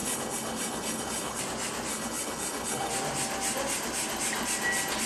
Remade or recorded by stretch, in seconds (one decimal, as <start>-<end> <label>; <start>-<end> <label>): 0.0-1.4 remade; 1.4-1.9 recorded; 1.9-2.9 remade; 2.9-5.1 recorded